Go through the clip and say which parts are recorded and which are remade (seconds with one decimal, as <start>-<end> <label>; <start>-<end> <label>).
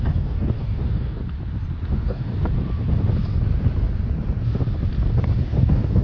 0.0-1.2 remade; 1.2-1.9 recorded; 1.9-2.3 remade; 2.3-5.2 recorded; 5.2-6.0 remade